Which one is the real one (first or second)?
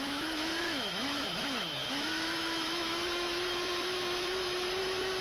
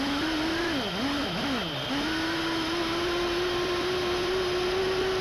second